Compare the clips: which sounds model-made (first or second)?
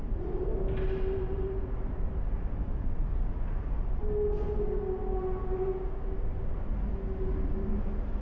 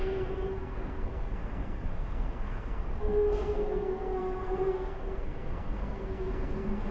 second